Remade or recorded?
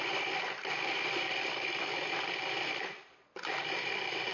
remade